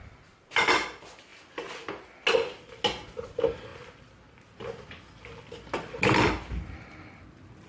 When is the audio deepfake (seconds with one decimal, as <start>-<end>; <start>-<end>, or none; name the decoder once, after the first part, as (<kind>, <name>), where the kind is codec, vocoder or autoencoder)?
none